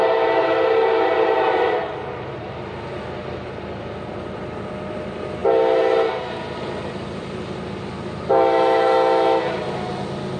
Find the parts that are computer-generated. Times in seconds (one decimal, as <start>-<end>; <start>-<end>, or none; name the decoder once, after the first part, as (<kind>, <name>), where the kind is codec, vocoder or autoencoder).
none